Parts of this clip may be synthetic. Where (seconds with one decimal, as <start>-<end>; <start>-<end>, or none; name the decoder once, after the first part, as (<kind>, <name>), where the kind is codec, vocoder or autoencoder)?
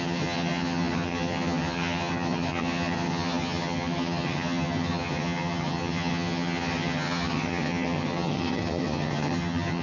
0.0-9.8 (vocoder, HiFi-GAN)